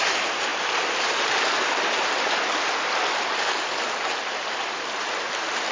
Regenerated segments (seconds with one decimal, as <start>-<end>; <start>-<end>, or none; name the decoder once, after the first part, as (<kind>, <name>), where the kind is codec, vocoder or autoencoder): none